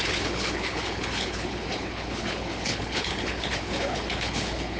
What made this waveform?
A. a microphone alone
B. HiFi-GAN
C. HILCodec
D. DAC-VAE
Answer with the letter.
C